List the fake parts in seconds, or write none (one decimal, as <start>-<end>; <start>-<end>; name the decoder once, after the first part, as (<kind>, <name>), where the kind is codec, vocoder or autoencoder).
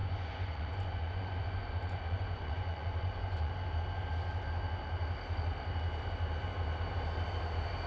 0.0-3.5 (vocoder, Vocos)